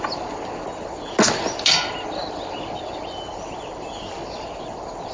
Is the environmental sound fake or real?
real